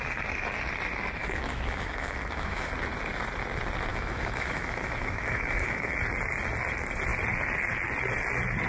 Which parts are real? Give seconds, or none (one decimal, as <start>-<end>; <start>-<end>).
0.0-1.2; 2.7-3.9; 5.9-8.7